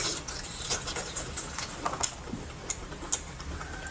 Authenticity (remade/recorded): recorded